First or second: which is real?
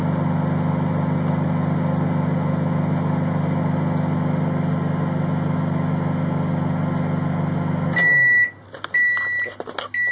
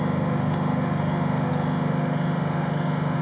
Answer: first